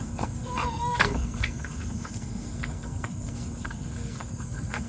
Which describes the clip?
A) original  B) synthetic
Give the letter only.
B